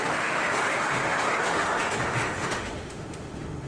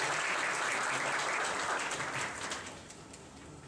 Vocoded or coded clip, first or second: first